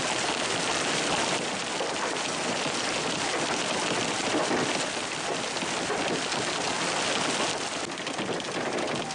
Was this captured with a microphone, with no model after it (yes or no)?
yes